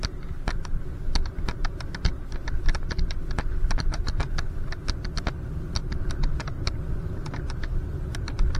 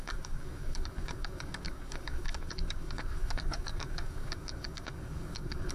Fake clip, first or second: second